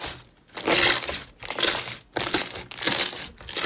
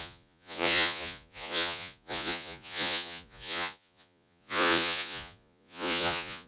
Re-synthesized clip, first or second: second